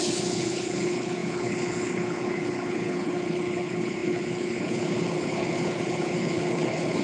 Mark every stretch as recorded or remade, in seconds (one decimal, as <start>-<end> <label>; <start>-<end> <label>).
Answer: 0.0-7.0 remade